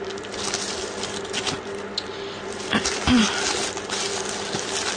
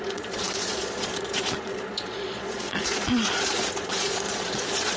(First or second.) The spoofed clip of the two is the second